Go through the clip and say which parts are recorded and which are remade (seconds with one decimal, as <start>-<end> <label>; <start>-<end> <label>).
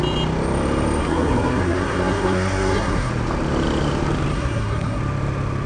0.0-1.0 recorded; 1.0-3.1 remade; 3.1-4.3 recorded; 4.3-5.0 remade; 5.0-5.7 recorded